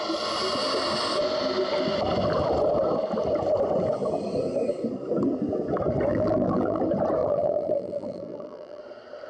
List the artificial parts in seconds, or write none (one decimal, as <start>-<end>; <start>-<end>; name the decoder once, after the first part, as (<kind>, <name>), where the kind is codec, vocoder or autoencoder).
6.1-6.8 (vocoder, BigVGAN v2); 7.2-8.8